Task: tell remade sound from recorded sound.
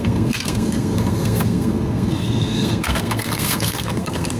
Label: remade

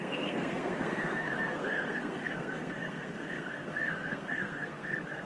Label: remade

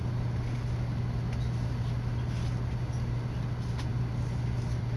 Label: recorded